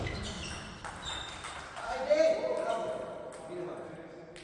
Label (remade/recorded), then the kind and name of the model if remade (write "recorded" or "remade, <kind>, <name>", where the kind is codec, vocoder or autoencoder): recorded